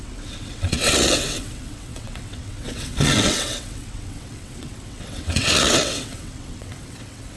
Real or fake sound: fake